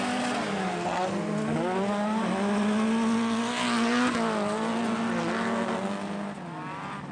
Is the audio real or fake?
real